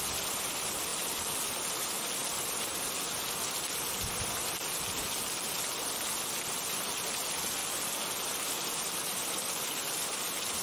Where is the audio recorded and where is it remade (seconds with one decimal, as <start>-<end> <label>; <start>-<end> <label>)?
0.0-7.6 remade; 7.6-8.4 recorded; 8.4-10.6 remade